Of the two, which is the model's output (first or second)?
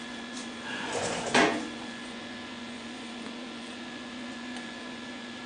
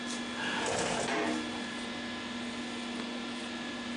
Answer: first